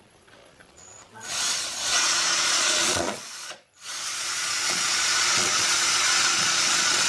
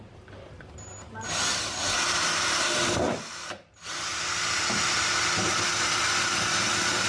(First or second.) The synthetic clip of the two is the first